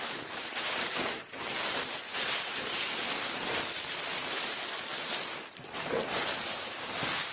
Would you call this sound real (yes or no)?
no